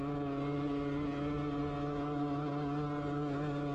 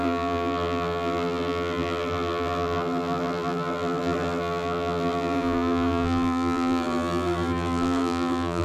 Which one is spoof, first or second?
second